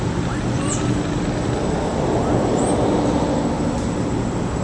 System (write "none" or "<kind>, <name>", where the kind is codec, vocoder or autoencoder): none